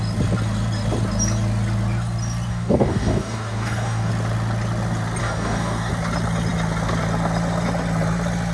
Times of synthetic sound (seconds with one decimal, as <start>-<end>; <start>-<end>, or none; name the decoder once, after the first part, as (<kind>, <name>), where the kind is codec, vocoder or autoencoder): 2.5-4.1 (codec, DAC); 5.2-5.9